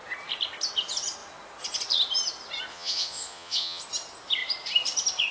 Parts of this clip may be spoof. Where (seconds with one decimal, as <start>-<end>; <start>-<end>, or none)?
2.7-3.8